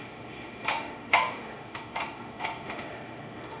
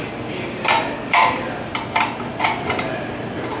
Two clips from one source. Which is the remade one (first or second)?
first